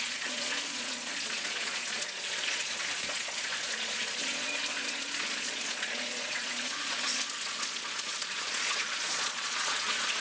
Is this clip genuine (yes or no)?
no